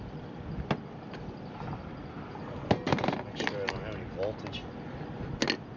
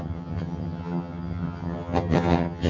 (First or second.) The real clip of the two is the first